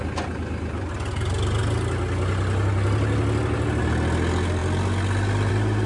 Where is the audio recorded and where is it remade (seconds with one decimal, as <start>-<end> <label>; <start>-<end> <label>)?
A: 0.0-5.9 recorded